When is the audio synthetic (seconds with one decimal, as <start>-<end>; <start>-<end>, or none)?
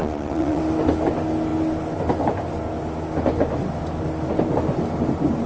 0.0-0.6